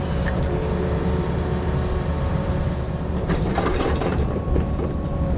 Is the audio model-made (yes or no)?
yes